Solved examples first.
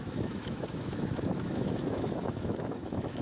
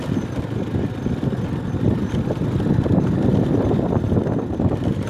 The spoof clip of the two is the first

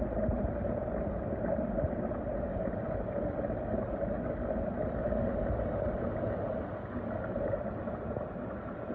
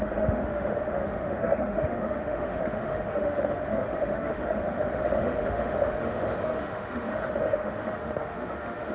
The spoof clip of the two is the second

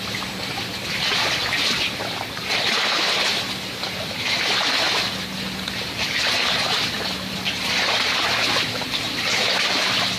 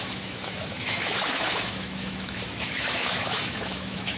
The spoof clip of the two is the second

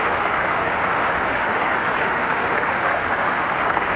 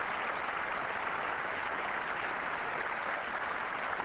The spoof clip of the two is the first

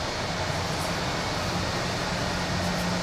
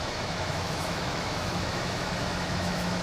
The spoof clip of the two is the second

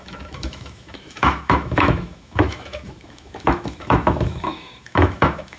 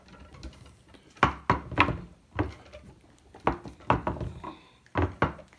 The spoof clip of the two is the first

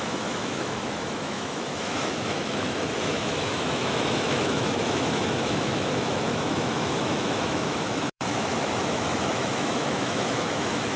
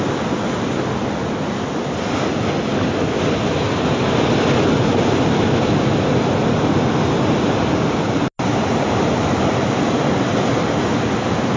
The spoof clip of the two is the first